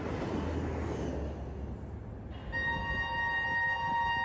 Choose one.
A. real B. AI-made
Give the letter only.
A